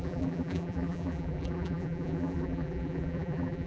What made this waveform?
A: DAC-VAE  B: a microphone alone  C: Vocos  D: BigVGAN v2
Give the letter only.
D